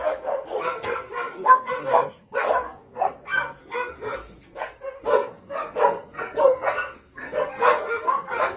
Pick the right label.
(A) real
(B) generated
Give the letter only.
B